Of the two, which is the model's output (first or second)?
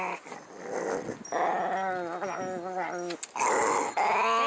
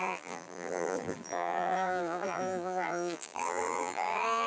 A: second